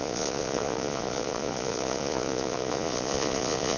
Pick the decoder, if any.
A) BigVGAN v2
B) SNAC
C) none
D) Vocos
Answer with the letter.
D